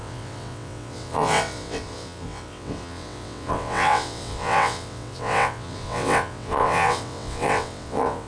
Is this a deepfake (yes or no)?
yes